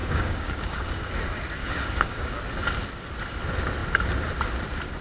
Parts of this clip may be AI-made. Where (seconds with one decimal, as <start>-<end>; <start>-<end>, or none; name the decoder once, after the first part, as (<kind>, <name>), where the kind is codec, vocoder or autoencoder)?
0.0-1.1 (codec, DAC); 1.6-2.4